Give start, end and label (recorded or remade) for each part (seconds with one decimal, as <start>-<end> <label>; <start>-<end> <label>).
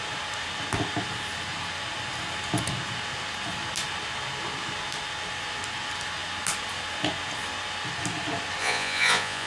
0.0-8.6 recorded; 8.6-9.5 remade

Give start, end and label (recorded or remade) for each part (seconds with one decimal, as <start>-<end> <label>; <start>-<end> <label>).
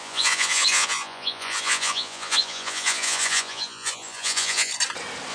0.0-4.7 remade; 4.7-5.3 recorded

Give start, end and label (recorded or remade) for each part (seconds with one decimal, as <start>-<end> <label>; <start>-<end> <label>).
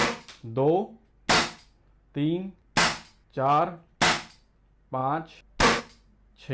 0.0-6.5 recorded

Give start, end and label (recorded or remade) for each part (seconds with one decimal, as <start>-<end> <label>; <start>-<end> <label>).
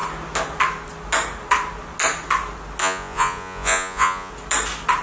0.0-2.8 recorded; 2.8-4.3 remade; 4.3-5.0 recorded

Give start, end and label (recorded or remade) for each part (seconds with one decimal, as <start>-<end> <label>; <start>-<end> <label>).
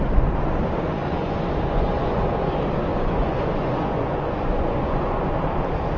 0.0-1.0 recorded; 1.0-2.5 remade; 2.5-2.9 recorded; 2.9-5.3 remade; 5.3-6.0 recorded